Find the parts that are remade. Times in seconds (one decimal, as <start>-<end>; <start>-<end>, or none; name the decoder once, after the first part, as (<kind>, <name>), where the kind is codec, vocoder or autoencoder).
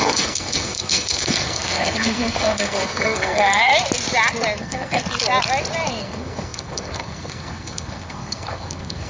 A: 0.0-3.7 (codec, SNAC); 4.6-5.0; 6.0-9.1